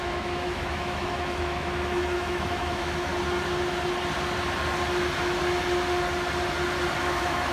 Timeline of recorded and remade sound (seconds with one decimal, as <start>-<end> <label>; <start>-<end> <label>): 0.0-3.1 remade; 3.1-7.0 recorded; 7.0-7.5 remade